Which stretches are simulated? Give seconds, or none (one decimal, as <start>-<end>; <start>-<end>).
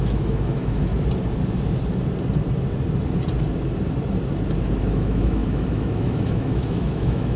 0.0-0.9; 4.9-7.4